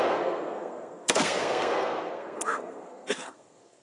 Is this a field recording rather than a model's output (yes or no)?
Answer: no